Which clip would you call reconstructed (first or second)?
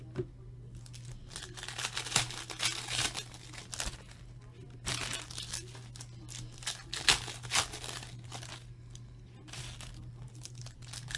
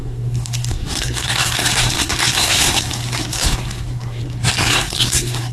second